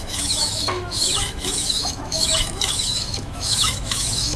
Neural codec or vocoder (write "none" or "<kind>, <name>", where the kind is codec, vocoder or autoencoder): autoencoder, DAC-VAE